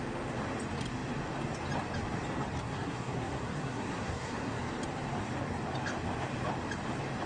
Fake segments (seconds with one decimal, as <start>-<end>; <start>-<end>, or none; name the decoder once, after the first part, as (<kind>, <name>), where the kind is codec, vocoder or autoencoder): 2.6-4.6 (codec, SNAC)